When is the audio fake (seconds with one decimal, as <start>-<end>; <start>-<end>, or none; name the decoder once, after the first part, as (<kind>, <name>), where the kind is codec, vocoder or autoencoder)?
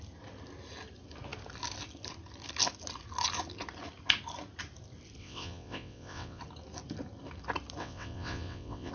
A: 5.2-6.4 (vocoder, WaveNeXt); 7.8-8.9